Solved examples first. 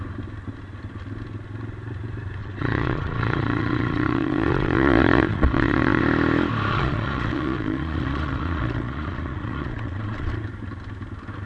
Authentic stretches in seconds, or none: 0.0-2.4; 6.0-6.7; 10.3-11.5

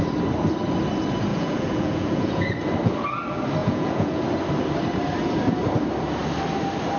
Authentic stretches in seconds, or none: 0.0-1.3; 2.5-3.6; 4.2-7.0

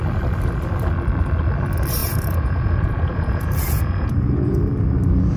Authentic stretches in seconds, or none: 0.0-2.0; 4.6-5.4

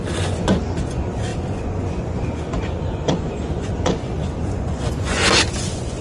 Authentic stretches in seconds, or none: none

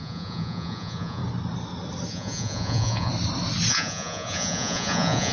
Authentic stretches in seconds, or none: 1.2-2.1; 3.1-3.7

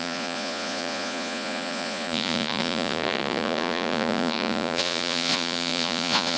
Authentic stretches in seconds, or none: none

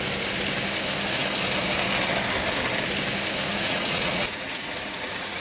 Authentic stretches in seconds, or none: 0.0-3.5